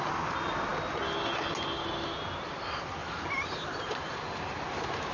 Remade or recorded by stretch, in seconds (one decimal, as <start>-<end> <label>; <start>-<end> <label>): 0.0-3.0 recorded; 3.0-4.2 remade; 4.2-5.1 recorded